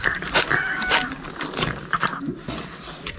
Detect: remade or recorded recorded